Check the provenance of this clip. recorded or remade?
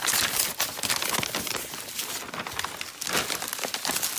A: recorded